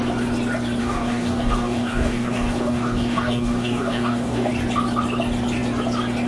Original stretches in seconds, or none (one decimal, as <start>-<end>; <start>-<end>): 0.0-0.8; 4.5-6.3